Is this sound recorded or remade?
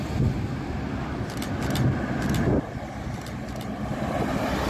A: recorded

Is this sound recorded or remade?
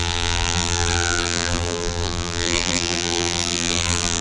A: remade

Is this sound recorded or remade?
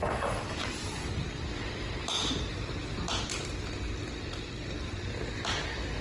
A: recorded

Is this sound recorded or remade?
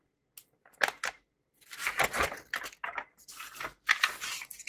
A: recorded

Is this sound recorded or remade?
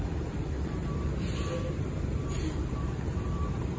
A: remade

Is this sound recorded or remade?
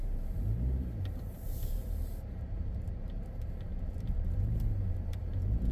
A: remade